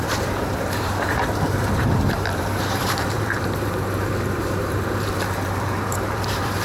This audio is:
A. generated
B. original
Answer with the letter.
A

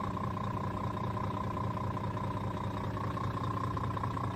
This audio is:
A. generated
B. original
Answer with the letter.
B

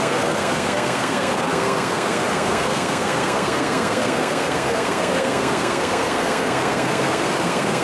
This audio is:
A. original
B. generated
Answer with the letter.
B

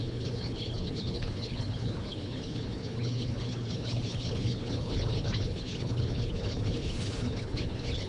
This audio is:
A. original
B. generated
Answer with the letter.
B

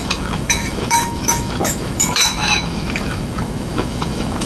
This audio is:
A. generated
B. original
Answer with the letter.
A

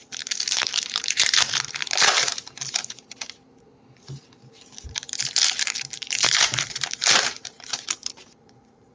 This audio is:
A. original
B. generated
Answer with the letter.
B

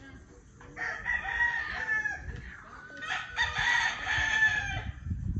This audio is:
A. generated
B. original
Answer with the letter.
B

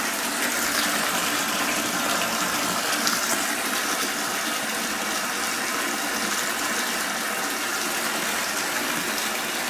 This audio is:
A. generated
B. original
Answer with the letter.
B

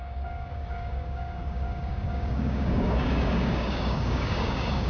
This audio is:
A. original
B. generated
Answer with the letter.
B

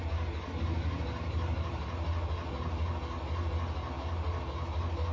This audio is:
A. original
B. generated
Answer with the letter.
A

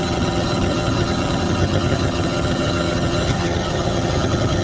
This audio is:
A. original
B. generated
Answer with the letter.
B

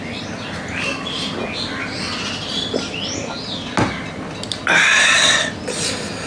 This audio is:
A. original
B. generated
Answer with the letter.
A